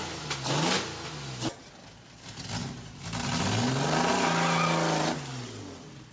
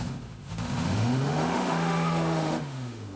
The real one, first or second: first